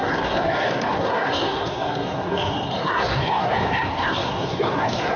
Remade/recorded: remade